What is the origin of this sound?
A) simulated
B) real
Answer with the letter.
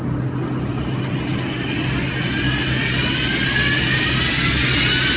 B